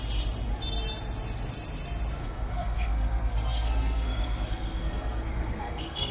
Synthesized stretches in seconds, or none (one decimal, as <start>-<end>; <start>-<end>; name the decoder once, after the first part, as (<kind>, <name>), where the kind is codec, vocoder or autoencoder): 2.2-6.1 (codec, SNAC)